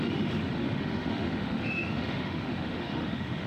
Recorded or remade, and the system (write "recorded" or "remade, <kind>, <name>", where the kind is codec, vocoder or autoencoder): remade, autoencoder, DAC-VAE